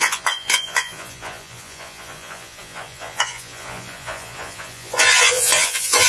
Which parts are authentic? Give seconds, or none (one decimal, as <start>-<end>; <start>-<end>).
none